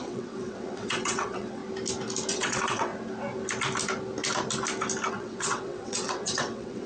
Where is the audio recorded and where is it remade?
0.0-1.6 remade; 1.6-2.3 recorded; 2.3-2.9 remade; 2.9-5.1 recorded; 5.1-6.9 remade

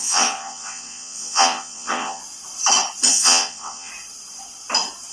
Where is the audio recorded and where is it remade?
0.0-2.2 remade; 2.2-3.1 recorded; 3.1-3.9 remade; 3.9-5.1 recorded

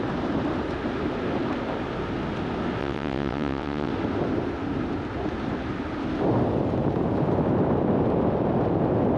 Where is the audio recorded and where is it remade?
0.0-2.8 recorded; 2.8-3.9 remade; 3.9-9.2 recorded

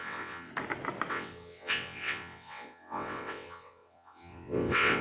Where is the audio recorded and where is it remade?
0.0-0.5 remade; 0.5-1.1 recorded; 1.1-5.0 remade